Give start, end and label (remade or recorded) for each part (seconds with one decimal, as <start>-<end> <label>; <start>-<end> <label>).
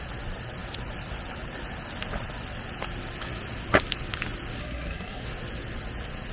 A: 0.0-4.6 recorded; 4.6-5.2 remade; 5.2-6.3 recorded